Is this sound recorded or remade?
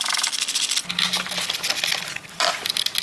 recorded